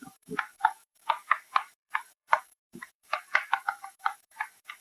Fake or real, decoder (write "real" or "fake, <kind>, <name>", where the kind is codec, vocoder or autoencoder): fake, codec, DAC